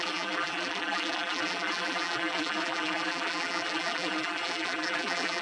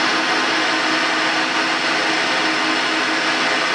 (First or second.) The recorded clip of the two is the second